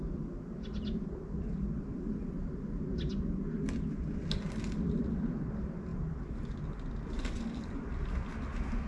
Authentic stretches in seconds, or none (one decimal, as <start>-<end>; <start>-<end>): 0.0-8.9